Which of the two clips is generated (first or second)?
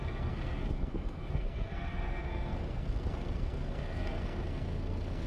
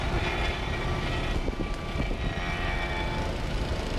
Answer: first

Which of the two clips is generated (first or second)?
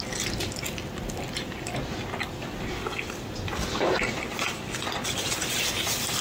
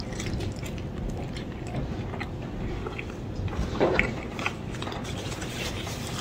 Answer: second